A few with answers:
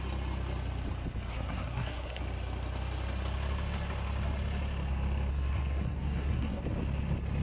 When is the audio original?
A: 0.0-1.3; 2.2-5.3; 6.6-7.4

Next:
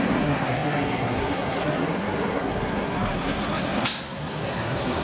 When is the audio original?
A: none